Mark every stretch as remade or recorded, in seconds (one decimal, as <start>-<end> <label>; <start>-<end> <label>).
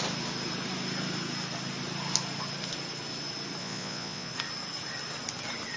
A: 0.0-3.6 recorded; 3.6-4.3 remade; 4.3-5.8 recorded